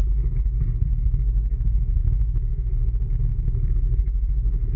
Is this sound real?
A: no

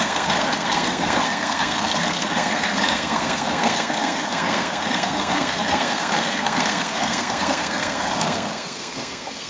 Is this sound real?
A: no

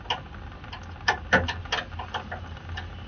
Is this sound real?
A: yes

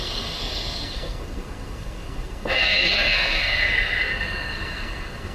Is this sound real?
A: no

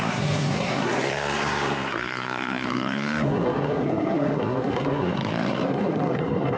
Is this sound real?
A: no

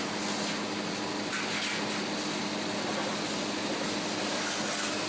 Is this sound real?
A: yes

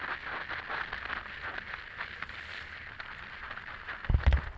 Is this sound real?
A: yes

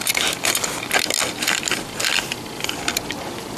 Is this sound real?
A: yes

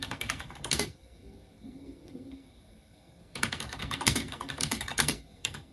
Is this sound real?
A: no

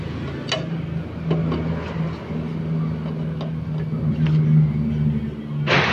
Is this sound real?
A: yes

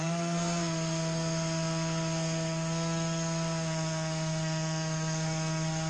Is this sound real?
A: no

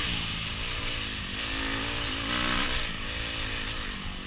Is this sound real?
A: yes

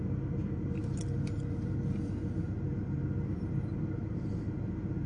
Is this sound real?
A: yes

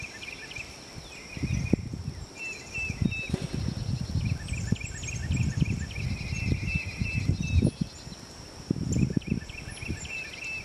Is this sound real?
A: yes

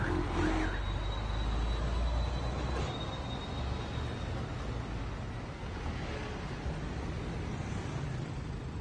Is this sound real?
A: yes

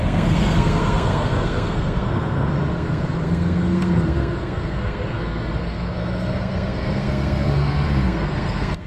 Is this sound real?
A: no